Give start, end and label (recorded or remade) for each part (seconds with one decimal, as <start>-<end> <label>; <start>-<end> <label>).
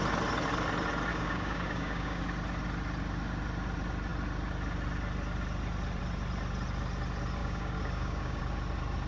0.0-1.1 recorded; 1.1-2.2 remade; 2.2-7.4 recorded; 7.4-8.4 remade; 8.4-9.1 recorded